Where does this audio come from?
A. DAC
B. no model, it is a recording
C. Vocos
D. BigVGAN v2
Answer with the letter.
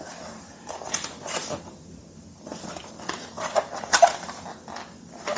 B